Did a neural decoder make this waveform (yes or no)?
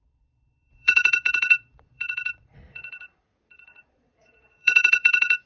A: yes